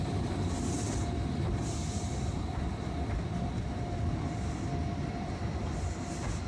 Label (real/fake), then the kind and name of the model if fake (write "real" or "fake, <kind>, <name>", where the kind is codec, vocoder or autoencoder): fake, vocoder, BigVGAN v2